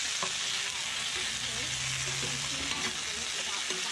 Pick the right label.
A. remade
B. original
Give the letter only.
B